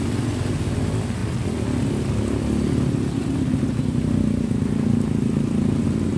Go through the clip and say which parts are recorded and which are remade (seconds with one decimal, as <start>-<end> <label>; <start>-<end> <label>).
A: 0.0-6.2 recorded